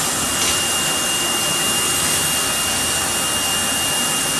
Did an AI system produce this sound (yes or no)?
no